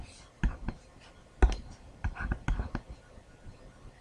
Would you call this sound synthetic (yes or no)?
no